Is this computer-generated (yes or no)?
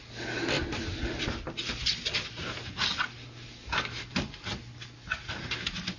no